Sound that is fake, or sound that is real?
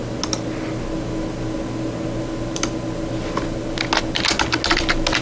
real